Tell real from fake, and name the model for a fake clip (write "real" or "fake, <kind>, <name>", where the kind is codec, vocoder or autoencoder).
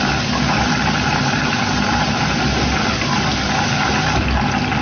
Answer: real